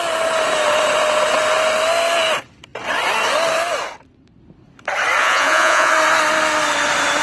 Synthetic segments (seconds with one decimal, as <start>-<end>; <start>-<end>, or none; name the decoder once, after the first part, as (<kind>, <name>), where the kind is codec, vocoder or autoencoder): 5.2-5.9 (vocoder, Vocos)